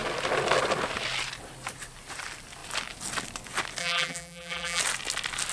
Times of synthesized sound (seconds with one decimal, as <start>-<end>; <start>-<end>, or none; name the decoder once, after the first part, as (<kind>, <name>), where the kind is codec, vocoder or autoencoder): 3.8-4.8 (vocoder, BigVGAN v2)